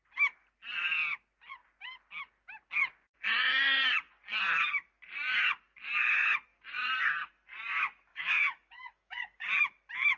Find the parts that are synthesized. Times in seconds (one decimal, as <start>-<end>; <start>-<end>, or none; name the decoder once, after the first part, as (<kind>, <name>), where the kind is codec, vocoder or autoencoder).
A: 8.1-9.5 (codec, DAC)